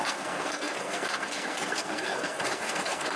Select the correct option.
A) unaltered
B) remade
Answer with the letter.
B